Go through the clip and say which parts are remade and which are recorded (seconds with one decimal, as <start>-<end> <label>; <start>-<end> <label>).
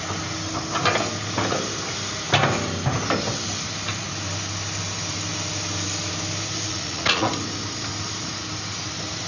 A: 0.0-6.7 recorded; 6.7-7.3 remade; 7.3-9.3 recorded